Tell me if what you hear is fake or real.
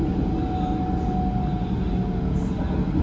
real